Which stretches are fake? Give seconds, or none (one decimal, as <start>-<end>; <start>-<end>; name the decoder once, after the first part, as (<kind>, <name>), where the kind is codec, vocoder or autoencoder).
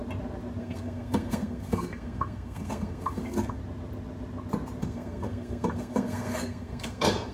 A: 0.6-3.6 (codec, SNAC); 4.8-7.3